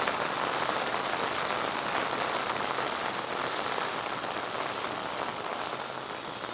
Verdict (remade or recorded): recorded